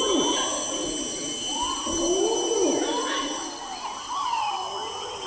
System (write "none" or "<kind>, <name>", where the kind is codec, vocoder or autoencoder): none